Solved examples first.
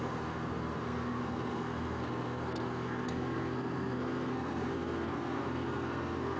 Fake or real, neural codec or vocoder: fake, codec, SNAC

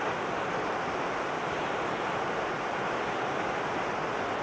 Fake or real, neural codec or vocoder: real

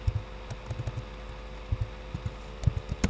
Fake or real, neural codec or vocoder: real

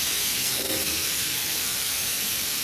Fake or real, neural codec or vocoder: fake, codec, SNAC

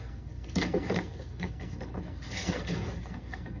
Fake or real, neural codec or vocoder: fake, codec, SNAC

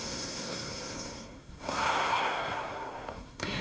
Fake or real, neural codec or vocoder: fake, codec, SNAC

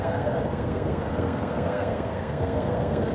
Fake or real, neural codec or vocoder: fake, codec, SNAC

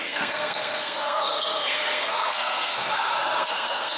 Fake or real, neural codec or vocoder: fake, codec, SNAC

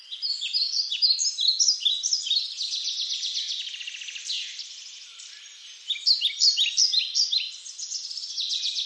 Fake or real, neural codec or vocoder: real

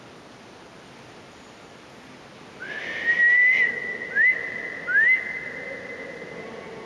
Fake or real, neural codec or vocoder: real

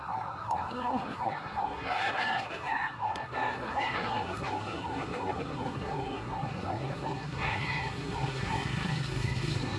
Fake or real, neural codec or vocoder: fake, codec, SNAC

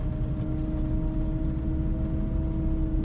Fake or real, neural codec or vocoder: real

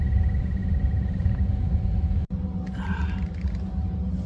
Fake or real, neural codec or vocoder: real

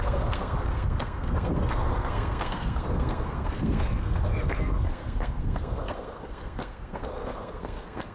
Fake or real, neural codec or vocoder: fake, codec, SNAC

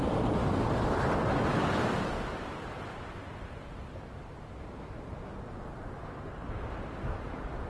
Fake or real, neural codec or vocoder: real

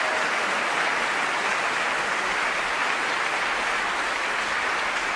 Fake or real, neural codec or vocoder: real